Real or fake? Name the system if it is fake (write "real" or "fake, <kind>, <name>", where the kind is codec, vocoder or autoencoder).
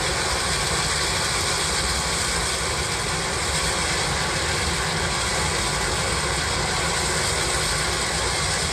real